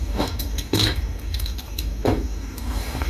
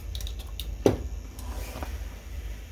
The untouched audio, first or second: second